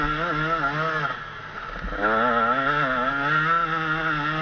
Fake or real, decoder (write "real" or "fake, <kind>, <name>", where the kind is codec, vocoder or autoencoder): real